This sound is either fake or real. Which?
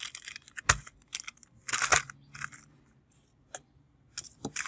real